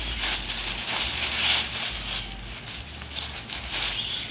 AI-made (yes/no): no